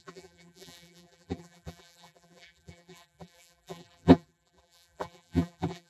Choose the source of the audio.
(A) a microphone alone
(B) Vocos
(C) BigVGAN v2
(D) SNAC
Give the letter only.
C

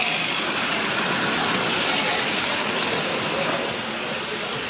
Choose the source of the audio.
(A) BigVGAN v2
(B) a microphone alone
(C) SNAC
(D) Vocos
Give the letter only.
B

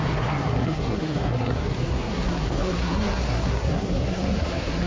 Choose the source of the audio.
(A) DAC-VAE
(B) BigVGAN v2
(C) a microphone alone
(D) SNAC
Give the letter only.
D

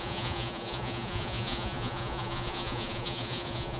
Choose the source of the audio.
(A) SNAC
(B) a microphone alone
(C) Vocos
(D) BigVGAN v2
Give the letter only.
C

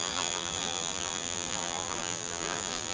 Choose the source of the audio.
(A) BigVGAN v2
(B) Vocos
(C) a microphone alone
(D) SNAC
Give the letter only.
A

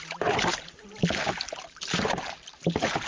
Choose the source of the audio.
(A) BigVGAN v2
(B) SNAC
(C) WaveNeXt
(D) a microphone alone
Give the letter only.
D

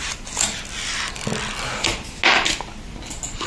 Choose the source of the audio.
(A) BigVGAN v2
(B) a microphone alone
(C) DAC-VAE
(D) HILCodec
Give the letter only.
B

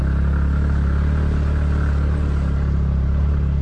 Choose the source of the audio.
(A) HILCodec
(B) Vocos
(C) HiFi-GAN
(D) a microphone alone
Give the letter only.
D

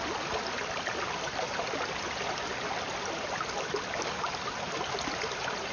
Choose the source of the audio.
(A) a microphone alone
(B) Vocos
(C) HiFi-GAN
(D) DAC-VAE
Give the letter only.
A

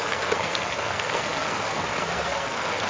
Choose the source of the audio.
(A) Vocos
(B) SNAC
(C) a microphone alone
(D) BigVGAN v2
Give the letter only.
B